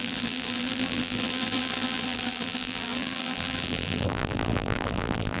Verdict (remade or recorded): remade